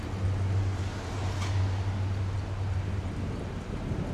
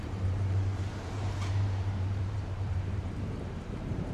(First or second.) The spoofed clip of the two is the second